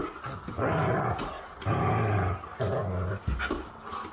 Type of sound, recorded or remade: recorded